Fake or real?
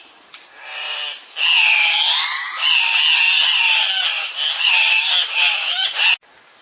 real